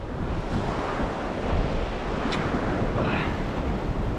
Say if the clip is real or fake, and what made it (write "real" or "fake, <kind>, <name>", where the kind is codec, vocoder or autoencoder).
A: real